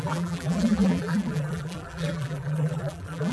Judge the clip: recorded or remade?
remade